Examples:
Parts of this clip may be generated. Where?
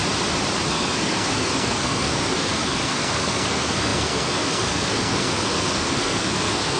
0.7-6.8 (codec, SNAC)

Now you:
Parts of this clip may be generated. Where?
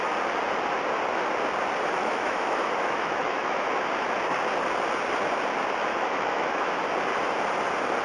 2.0-3.7 (autoencoder, DAC-VAE); 5.9-6.7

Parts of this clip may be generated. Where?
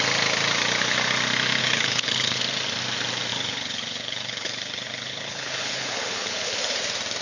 1.6-2.4 (codec, HILCodec); 3.3-6.8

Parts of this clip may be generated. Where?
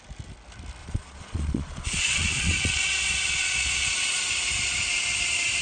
0.8-4.2 (vocoder, Vocos)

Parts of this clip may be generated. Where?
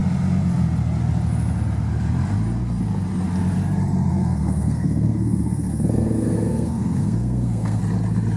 4.1-7.8 (codec, SNAC)